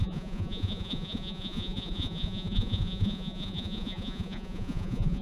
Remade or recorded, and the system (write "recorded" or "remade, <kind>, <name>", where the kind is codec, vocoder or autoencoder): remade, vocoder, Vocos